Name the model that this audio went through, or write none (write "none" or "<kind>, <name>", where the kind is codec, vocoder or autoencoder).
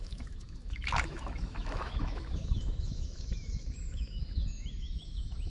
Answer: autoencoder, DAC-VAE